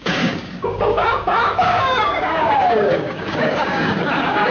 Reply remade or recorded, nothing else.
remade